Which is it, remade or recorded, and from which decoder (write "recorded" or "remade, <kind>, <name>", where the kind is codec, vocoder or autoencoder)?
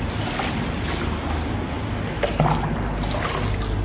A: recorded